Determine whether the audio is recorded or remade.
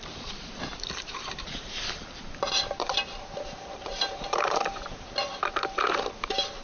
remade